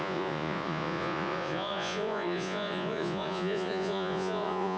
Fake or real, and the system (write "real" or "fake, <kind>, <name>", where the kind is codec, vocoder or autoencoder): fake, vocoder, Vocos